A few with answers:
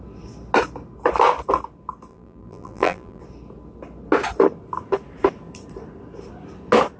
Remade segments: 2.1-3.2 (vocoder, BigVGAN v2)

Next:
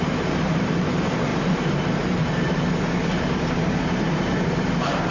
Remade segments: 0.0-5.1 (vocoder, BigVGAN v2)

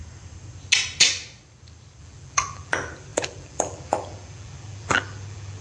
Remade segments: 2.0-5.6 (vocoder, BigVGAN v2)

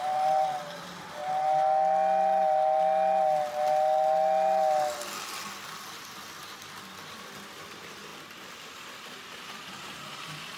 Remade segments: 0.0-1.2 (vocoder, BigVGAN v2); 5.3-10.6

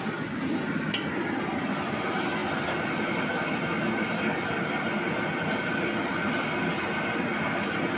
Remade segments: none